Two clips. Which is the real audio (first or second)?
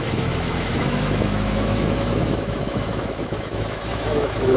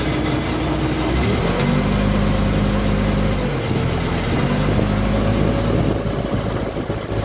second